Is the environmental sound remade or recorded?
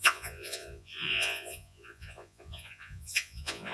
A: remade